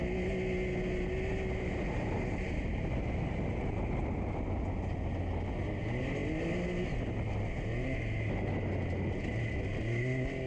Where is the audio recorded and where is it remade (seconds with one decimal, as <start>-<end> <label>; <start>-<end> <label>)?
0.0-10.5 recorded